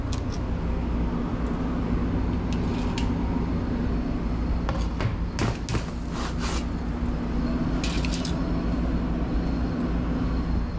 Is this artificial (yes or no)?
no